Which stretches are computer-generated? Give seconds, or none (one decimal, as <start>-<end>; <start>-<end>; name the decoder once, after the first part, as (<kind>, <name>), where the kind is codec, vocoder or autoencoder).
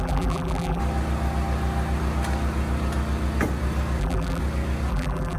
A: 0.0-0.8 (vocoder, BigVGAN v2); 4.0-4.4; 4.9-5.4